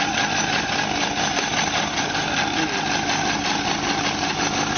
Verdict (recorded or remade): recorded